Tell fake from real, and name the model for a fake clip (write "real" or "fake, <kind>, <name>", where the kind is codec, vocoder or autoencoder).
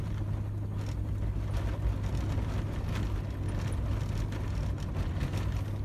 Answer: real